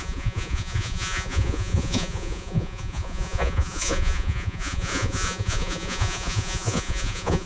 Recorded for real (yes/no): no